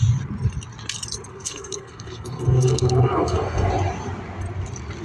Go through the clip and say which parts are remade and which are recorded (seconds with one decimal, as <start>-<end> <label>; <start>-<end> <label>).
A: 0.0-1.3 recorded; 1.3-3.7 remade; 3.7-5.0 recorded

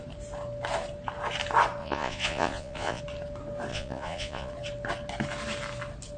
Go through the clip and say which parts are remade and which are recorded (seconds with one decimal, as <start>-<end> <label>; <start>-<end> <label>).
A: 0.0-1.8 recorded; 1.8-3.0 remade; 3.0-3.7 recorded; 3.7-4.5 remade; 4.5-6.2 recorded

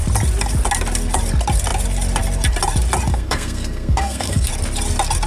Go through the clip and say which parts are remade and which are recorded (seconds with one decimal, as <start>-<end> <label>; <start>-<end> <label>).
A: 0.0-3.1 recorded; 3.1-4.5 remade; 4.5-5.3 recorded

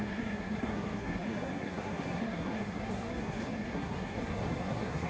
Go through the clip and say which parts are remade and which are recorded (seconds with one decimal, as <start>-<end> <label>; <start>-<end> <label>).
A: 0.0-5.1 remade

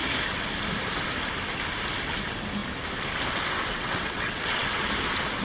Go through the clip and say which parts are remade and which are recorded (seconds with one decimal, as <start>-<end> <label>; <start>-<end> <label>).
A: 0.0-3.7 recorded; 3.7-4.6 remade; 4.6-5.4 recorded

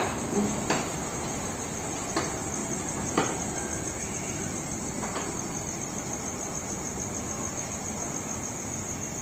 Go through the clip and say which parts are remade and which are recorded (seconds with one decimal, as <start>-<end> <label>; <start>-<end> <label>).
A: 0.0-9.2 recorded

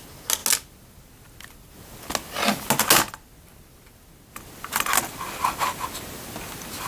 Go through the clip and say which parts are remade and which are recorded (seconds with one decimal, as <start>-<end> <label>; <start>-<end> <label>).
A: 0.0-6.9 recorded

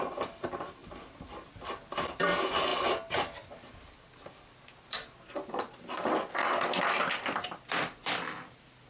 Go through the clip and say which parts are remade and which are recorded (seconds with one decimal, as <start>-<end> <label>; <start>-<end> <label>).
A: 0.0-0.8 remade; 0.8-2.0 recorded; 2.0-8.9 remade